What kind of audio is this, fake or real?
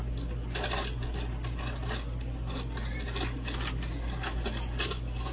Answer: real